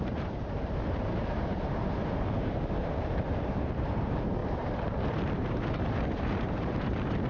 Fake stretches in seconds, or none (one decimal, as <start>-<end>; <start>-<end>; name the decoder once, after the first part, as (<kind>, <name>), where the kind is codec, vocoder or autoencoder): 0.0-7.3 (vocoder, BigVGAN v2)